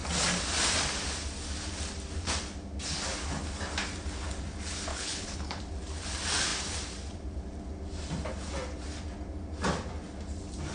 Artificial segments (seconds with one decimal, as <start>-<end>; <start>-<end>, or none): 4.9-5.6

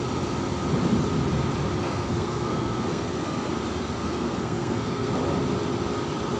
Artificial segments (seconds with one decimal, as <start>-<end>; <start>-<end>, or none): 1.8-3.5; 4.0-5.1

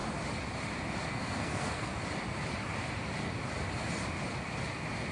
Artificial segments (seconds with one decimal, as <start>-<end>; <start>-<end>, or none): 1.1-1.9

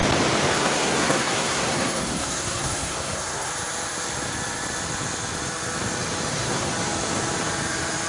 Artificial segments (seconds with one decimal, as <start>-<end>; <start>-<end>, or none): 0.5-3.5; 6.3-6.7

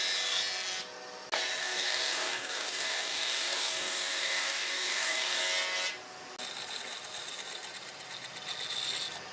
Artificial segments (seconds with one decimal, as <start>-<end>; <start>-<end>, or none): 1.6-5.4

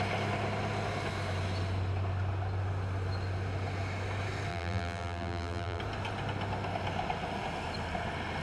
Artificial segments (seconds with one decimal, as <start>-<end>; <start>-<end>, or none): 4.5-5.8